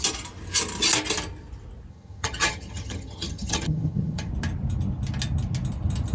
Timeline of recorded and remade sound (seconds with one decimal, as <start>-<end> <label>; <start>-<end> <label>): 0.0-1.9 recorded; 1.9-4.3 remade; 4.3-6.1 recorded

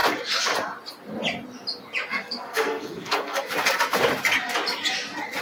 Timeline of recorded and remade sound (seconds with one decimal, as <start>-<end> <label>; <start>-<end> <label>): 0.0-2.1 recorded; 2.1-3.5 remade; 3.5-5.4 recorded

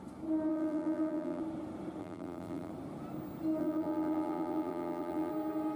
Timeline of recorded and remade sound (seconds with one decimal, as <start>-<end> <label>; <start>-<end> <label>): 0.0-0.5 recorded; 0.5-1.4 remade; 1.4-2.0 recorded; 2.0-2.7 remade; 2.7-3.6 recorded; 3.6-5.3 remade; 5.3-5.8 recorded

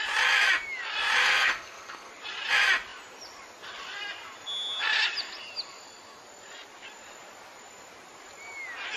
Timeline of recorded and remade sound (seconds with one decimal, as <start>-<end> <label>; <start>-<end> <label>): 0.0-1.2 recorded; 1.2-2.1 remade; 2.1-9.0 recorded

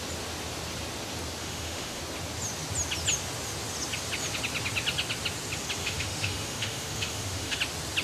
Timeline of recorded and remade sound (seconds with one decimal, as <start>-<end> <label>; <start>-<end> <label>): 0.0-1.4 recorded; 1.4-2.0 remade; 2.0-5.8 recorded; 5.8-7.6 remade; 7.6-8.0 recorded

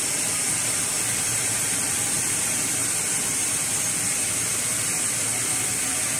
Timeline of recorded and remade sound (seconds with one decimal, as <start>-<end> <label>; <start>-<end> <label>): 0.0-2.8 remade; 2.8-4.5 recorded; 4.5-6.2 remade